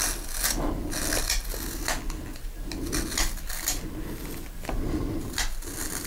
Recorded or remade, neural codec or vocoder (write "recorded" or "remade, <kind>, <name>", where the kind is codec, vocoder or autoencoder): recorded